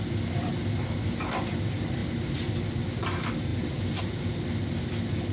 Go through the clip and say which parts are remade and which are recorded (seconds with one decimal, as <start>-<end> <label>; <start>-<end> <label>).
0.0-3.5 recorded; 3.5-4.0 remade; 4.0-5.3 recorded